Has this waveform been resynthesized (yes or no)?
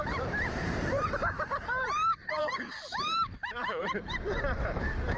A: yes